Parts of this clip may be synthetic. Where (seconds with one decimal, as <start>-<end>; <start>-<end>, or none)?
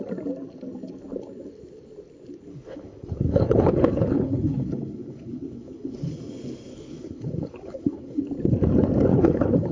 2.5-6.1; 6.7-8.2; 9.1-9.7